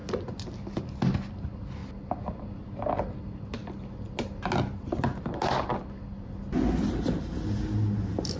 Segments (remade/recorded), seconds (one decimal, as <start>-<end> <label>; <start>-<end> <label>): 0.0-8.4 recorded